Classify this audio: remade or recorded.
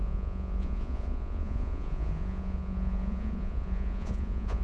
remade